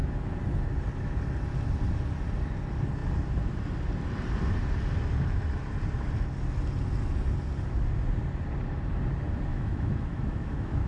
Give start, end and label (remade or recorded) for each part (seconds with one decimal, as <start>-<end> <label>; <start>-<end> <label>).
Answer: 0.0-9.5 recorded; 9.5-10.9 remade